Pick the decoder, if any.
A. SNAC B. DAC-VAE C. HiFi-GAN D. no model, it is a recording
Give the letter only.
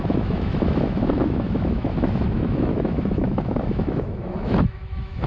B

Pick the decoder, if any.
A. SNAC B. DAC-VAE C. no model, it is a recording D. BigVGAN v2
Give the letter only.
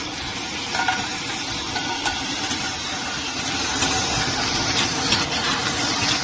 C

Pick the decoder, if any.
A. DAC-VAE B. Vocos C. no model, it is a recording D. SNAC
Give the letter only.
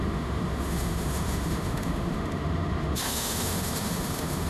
A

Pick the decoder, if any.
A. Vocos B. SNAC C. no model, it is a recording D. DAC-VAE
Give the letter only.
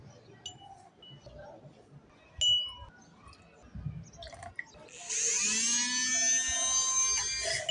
C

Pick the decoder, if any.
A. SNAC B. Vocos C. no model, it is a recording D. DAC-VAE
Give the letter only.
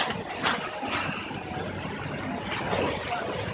C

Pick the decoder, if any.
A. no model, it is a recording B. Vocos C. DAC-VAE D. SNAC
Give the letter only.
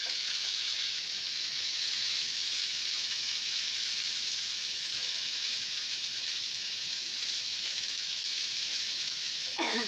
C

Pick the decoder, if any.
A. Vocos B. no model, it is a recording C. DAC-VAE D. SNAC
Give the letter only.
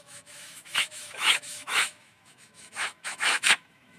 C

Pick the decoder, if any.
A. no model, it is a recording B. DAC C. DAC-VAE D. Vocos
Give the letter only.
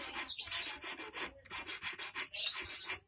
A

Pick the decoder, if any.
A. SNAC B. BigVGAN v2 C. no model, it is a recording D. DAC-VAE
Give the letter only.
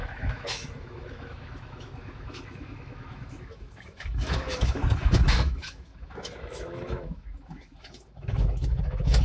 D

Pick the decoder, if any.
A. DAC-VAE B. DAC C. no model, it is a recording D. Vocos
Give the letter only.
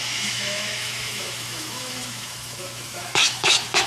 A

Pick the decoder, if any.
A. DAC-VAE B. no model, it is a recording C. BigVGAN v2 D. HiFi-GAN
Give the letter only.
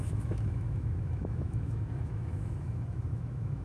A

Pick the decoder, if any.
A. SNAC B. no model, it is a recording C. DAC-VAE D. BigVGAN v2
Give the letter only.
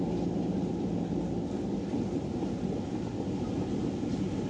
B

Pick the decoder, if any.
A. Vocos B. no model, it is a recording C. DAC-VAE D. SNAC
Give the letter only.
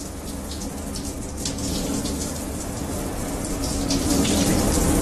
B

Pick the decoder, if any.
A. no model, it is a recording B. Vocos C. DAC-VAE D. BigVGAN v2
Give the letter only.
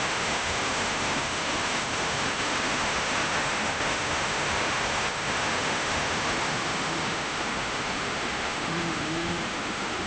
C